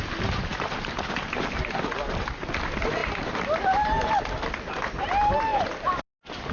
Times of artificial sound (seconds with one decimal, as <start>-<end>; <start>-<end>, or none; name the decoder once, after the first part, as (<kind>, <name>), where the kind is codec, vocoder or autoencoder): none